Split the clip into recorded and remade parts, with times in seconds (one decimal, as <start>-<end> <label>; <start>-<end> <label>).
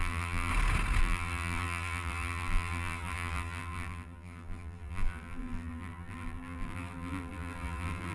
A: 0.0-0.5 remade; 0.5-1.0 recorded; 1.0-8.1 remade